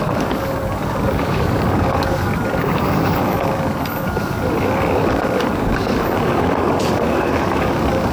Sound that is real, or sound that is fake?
fake